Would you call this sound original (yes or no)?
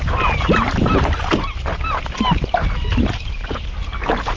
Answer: yes